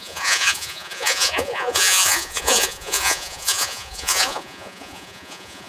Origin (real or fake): fake